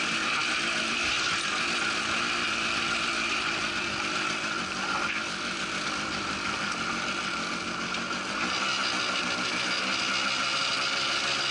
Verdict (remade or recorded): recorded